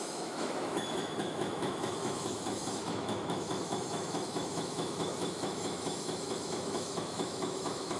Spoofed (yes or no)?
yes